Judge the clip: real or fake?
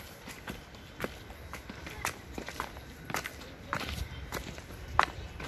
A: fake